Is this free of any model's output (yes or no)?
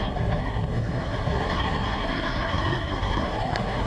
no